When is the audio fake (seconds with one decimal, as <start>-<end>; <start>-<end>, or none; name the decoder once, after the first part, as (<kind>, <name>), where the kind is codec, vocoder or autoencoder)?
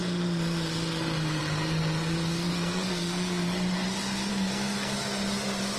2.4-3.4 (codec, SNAC); 4.3-4.9